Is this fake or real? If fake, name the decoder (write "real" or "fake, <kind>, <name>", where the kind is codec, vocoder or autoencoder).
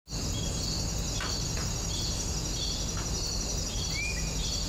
real